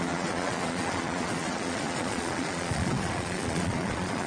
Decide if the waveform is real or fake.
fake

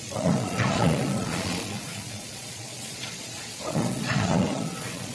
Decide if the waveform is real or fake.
fake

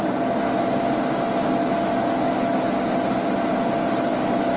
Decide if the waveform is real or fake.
real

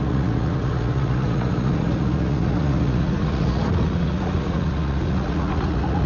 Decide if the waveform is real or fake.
fake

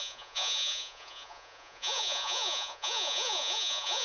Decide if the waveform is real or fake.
fake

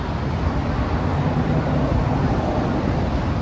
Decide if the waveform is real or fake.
real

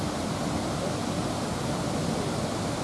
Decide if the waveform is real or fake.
real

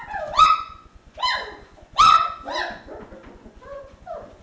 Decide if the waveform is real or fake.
fake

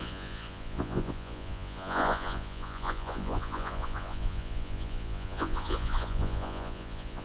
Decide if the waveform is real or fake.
fake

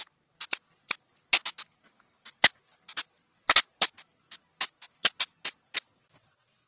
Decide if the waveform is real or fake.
real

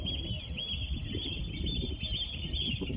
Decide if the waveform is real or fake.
real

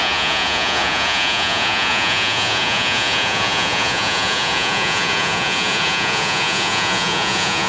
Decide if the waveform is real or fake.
fake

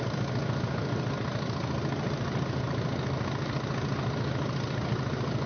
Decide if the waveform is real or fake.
real